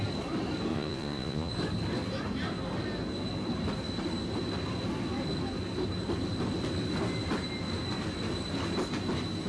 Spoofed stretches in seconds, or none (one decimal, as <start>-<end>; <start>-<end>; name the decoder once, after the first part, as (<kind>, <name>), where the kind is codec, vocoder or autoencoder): 0.7-1.5 (vocoder, Vocos)